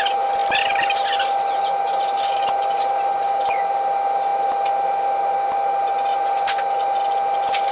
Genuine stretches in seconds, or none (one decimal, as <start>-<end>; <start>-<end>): 0.0-7.7